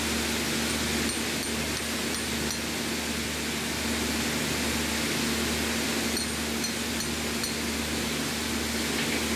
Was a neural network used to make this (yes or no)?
no